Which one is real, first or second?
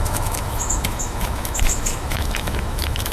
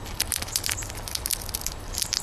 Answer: second